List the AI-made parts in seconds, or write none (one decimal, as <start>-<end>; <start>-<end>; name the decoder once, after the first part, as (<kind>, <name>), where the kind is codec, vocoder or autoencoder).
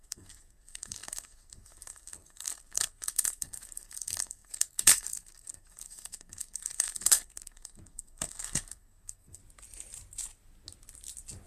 0.0-9.4 (codec, SNAC)